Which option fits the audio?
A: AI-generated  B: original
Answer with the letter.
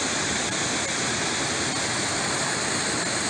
B